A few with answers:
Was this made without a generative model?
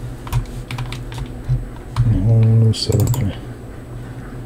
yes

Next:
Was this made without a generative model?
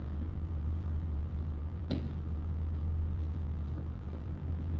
no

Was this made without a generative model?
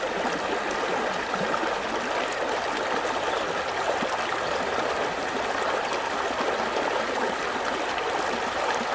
yes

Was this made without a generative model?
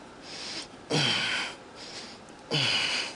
yes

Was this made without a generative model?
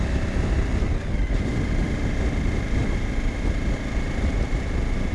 yes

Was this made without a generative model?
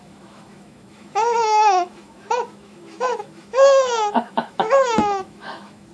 no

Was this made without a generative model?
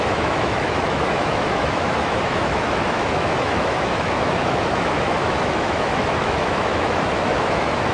no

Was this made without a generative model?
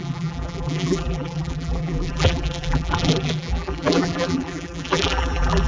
no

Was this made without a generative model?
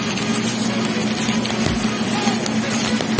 yes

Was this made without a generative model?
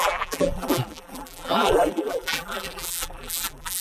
no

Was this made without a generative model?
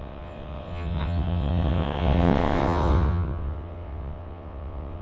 no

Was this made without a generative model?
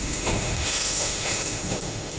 no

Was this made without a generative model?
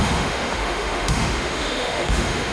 no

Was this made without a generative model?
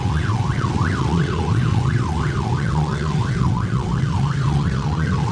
no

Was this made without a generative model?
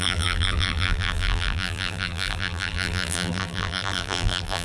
no